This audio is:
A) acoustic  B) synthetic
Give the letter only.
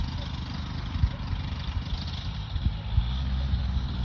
A